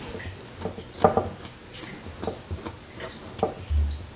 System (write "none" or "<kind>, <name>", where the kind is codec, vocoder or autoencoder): none